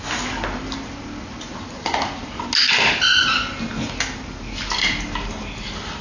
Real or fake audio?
real